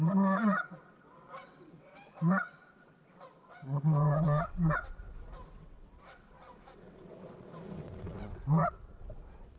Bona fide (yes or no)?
no